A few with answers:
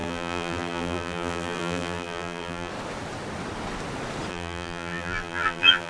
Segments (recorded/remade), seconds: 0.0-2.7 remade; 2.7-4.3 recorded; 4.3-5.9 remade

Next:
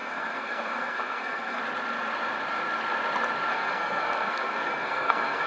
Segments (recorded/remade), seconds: 0.0-1.6 remade; 1.6-3.5 recorded; 3.5-5.5 remade

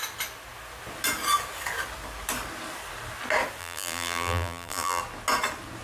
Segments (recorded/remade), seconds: 0.0-3.6 recorded; 3.6-5.0 remade; 5.0-5.8 recorded